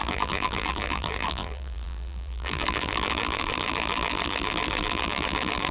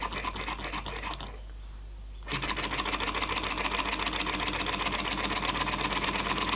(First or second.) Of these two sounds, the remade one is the first